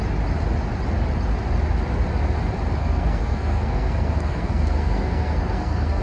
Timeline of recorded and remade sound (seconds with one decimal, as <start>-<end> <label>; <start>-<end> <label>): 0.0-2.8 recorded; 2.8-6.0 remade